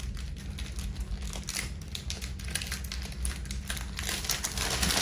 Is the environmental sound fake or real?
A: real